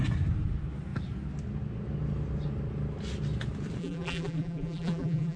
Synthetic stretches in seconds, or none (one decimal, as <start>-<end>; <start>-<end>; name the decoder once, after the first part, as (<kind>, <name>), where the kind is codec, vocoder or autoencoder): 3.8-5.4 (vocoder, BigVGAN v2)

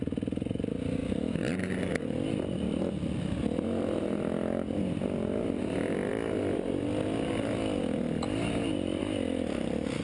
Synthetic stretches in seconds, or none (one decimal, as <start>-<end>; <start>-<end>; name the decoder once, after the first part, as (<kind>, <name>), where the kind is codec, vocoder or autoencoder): none

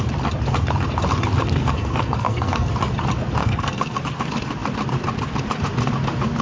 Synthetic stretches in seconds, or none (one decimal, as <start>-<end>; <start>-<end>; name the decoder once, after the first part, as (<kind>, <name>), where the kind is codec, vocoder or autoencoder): 1.4-2.7 (codec, SNAC); 3.4-4.0